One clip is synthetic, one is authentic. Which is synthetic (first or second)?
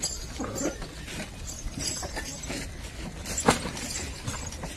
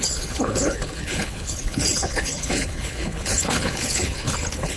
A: second